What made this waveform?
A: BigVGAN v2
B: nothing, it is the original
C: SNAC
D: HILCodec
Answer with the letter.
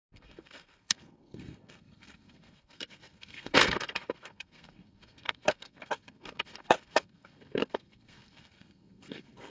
C